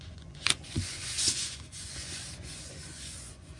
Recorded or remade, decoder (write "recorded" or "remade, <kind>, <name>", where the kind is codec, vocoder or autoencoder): remade, vocoder, Vocos